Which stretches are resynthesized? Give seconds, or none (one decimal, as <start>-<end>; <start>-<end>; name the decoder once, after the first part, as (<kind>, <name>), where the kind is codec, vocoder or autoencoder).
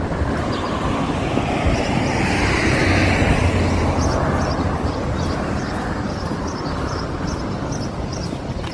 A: 0.0-2.8 (vocoder, BigVGAN v2); 3.8-8.7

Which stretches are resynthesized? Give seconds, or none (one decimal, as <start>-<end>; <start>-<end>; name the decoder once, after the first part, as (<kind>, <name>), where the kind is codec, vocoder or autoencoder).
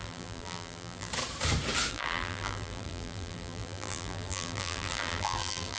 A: 0.0-1.1 (vocoder, BigVGAN v2); 1.9-5.8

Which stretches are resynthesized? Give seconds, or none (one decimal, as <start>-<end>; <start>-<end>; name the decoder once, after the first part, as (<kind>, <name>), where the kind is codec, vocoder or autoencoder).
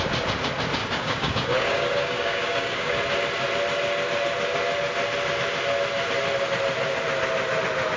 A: 0.8-2.9 (codec, DAC)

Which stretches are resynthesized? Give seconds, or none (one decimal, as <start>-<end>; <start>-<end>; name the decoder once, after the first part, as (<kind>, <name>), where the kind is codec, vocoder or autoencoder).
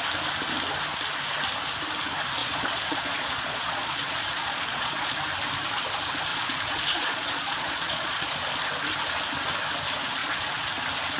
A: 2.4-5.1 (vocoder, Vocos); 6.3-8.3; 10.2-10.7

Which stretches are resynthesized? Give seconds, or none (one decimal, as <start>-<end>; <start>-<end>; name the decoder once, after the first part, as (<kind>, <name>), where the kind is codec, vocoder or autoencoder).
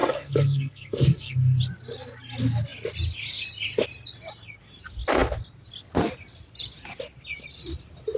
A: 0.0-1.6 (codec, SNAC)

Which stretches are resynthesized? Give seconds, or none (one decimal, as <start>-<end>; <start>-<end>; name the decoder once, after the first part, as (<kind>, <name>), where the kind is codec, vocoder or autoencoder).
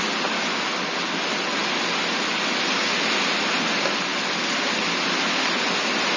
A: none